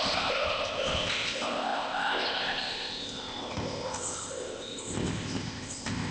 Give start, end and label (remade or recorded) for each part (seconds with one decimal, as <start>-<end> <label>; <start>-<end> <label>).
0.0-6.1 remade